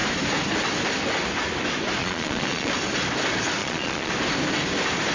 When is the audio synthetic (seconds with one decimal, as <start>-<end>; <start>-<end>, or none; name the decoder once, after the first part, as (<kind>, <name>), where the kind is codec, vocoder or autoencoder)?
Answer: 2.0-2.7 (vocoder, Vocos); 3.6-4.1